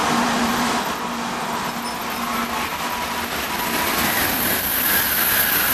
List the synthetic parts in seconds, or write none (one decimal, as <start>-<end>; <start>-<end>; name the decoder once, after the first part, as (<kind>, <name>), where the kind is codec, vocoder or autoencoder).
0.0-0.7 (vocoder, BigVGAN v2)